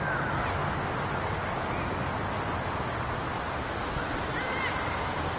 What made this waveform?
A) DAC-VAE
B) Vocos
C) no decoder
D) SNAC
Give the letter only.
C